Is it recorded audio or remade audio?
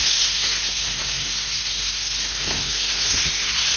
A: remade